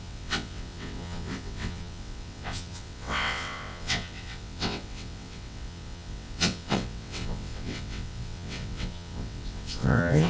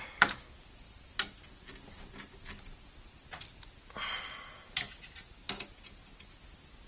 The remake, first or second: first